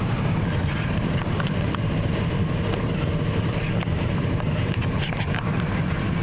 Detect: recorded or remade remade